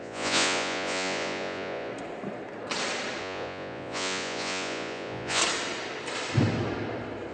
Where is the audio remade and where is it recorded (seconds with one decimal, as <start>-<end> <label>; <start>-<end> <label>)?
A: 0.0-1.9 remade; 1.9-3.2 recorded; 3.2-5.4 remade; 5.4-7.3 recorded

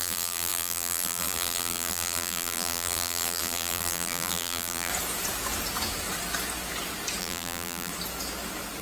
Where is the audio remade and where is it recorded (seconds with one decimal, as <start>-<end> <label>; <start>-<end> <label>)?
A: 0.0-4.9 remade; 4.9-7.2 recorded; 7.2-7.9 remade; 7.9-8.8 recorded

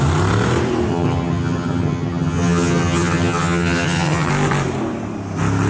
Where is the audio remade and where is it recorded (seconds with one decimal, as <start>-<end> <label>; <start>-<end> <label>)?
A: 0.0-0.9 recorded; 0.9-4.3 remade; 4.3-5.7 recorded